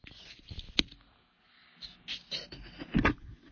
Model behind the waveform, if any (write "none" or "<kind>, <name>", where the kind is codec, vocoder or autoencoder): none